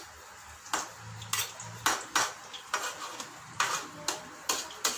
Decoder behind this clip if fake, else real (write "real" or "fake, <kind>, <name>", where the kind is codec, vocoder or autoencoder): real